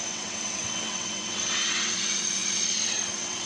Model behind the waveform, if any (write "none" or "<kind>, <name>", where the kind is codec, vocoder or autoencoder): vocoder, WaveNeXt